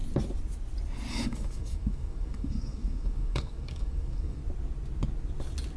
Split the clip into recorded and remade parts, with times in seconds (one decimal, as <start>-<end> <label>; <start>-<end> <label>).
0.0-1.1 recorded; 1.1-4.4 remade; 4.4-5.8 recorded